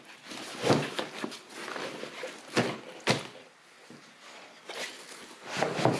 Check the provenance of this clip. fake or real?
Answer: real